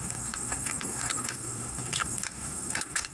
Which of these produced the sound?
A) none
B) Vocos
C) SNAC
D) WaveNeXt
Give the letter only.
C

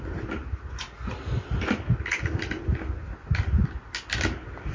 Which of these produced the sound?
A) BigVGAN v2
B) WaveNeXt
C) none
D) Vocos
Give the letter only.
C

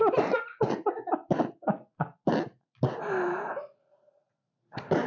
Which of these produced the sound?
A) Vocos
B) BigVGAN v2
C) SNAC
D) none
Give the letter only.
D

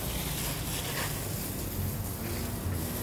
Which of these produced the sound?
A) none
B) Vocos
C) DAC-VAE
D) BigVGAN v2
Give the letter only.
A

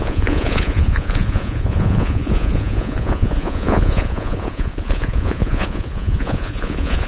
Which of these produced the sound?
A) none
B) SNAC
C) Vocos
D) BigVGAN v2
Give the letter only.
C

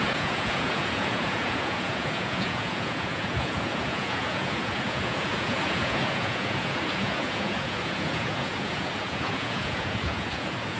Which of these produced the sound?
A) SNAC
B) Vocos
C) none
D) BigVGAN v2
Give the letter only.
B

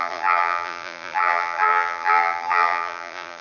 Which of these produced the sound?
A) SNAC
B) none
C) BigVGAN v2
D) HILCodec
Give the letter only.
C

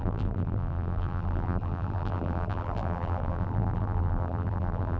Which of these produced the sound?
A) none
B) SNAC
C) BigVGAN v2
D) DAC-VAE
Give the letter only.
C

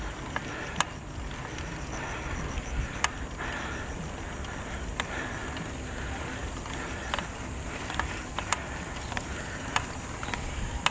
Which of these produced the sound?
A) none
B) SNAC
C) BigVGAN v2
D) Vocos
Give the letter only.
A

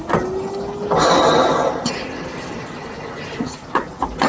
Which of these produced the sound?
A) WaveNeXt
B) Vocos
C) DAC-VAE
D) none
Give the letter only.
D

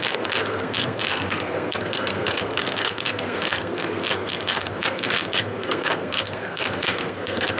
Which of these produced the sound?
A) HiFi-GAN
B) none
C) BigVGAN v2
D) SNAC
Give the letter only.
D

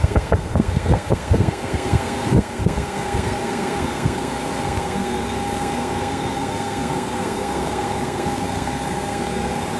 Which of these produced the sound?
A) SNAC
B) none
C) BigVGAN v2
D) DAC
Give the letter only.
A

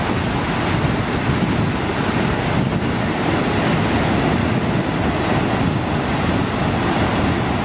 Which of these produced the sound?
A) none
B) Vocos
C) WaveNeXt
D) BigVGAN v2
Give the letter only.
A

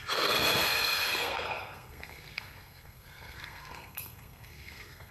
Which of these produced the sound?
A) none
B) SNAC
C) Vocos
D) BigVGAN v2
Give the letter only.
B